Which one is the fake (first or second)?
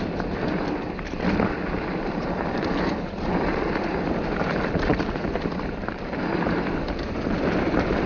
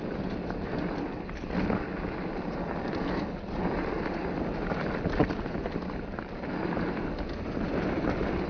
first